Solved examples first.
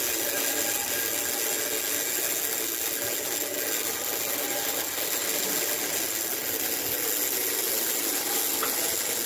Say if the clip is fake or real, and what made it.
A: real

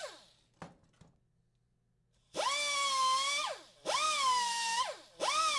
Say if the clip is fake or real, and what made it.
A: real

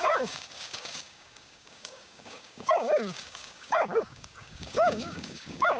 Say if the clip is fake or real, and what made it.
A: fake, codec, DAC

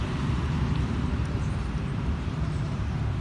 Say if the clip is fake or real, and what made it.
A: fake, vocoder, BigVGAN v2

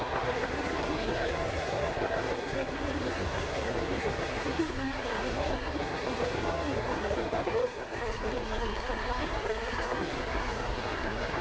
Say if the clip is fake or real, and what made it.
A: fake, codec, SNAC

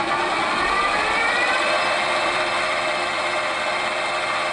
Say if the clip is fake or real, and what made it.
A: fake, vocoder, BigVGAN v2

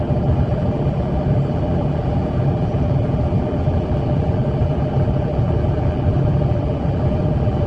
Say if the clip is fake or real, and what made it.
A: fake, vocoder, BigVGAN v2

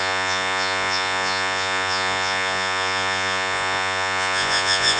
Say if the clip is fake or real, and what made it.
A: fake, vocoder, Vocos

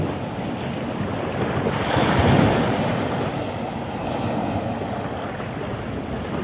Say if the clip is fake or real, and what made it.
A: real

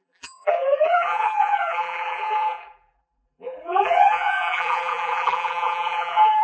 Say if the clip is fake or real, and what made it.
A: fake, vocoder, BigVGAN v2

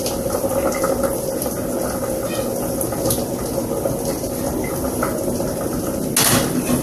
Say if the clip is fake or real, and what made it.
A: real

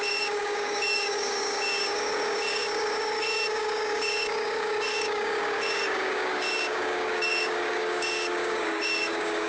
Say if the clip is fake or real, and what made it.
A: fake, codec, DAC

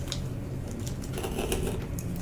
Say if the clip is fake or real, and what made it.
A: real